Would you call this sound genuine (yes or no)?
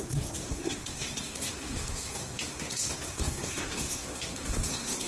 no